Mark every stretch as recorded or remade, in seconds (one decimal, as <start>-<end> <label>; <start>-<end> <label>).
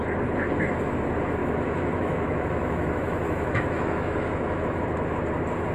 0.0-1.4 recorded; 1.4-4.8 remade; 4.8-5.7 recorded